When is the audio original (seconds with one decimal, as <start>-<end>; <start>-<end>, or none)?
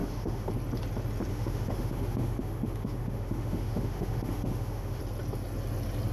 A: 0.5-1.3; 5.0-6.1